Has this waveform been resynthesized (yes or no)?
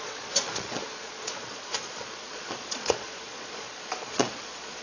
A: yes